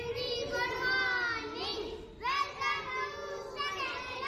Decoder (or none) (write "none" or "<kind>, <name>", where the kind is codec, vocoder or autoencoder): none